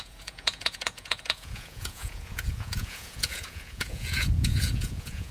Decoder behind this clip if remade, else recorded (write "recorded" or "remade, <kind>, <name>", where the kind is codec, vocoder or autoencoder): remade, vocoder, Vocos